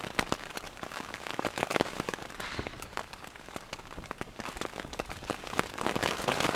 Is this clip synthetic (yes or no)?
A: yes